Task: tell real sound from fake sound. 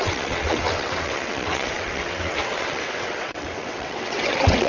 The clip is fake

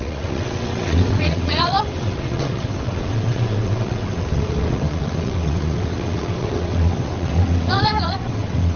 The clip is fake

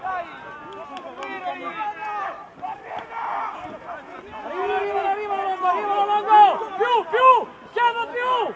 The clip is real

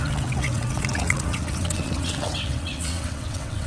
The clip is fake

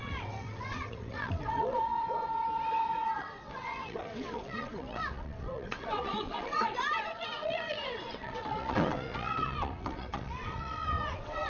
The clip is fake